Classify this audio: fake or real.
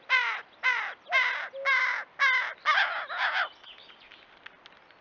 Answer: real